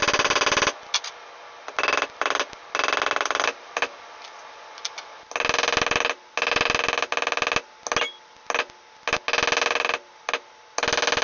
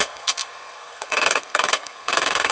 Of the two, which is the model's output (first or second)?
second